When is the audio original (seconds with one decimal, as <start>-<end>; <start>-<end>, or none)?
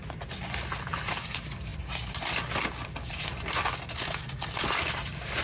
0.0-5.4